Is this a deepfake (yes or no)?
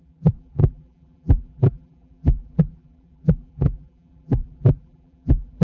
yes